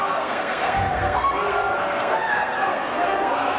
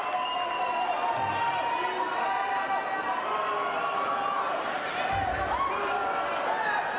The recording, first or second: second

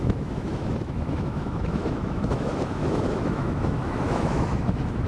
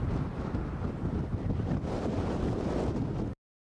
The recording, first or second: second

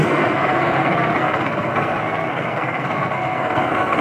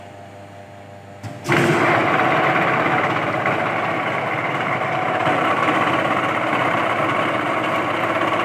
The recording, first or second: second